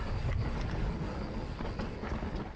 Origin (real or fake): real